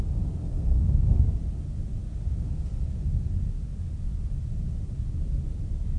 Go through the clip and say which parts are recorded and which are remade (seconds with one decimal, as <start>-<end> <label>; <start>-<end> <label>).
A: 0.0-0.4 recorded; 0.4-1.3 remade; 1.3-6.0 recorded